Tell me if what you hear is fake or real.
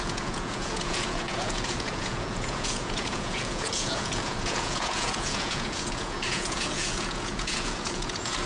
fake